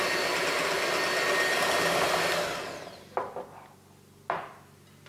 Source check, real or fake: real